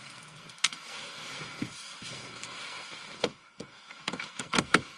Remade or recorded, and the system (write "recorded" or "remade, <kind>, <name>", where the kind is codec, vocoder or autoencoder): remade, codec, SNAC